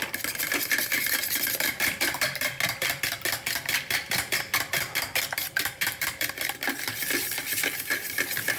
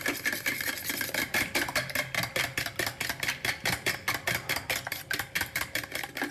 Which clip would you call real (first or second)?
second